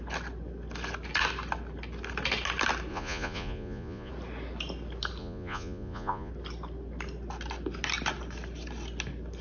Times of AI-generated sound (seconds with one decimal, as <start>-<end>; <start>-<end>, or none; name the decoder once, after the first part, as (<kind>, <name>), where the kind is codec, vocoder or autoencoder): 2.9-4.1 (vocoder, Vocos); 5.2-6.3